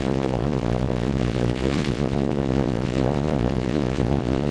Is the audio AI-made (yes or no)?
yes